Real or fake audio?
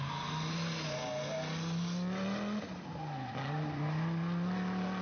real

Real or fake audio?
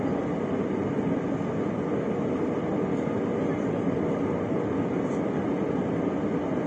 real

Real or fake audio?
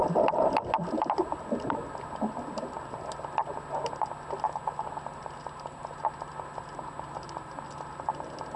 real